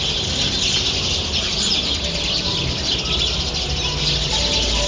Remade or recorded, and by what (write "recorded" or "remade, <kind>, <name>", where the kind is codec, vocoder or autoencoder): recorded